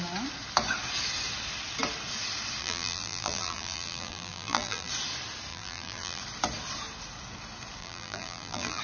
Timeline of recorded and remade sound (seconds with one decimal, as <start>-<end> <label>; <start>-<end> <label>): 0.0-2.6 recorded; 2.6-4.9 remade; 4.9-5.5 recorded; 5.5-6.2 remade; 6.2-7.8 recorded; 7.8-8.8 remade